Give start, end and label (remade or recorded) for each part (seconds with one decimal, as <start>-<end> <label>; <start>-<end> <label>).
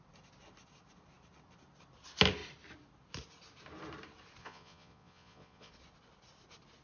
0.0-4.4 recorded; 4.4-5.7 remade; 5.7-6.8 recorded